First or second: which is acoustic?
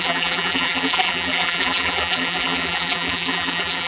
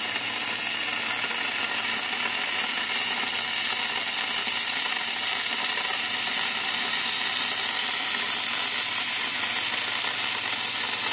second